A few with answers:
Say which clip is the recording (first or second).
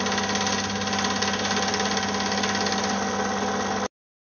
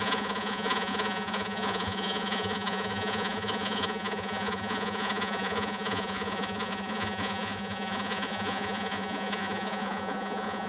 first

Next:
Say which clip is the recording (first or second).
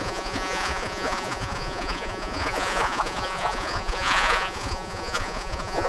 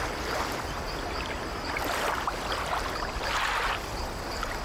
second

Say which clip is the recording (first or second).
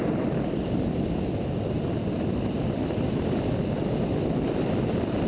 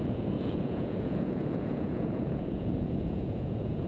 first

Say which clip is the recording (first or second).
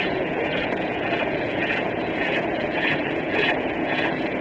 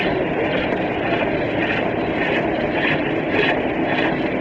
second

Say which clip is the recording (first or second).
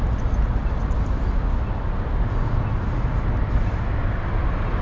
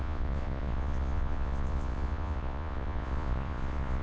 first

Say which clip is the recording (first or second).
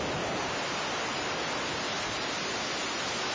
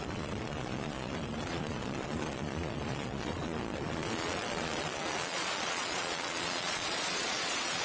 first